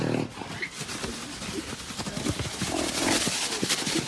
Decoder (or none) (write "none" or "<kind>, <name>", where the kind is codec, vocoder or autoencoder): none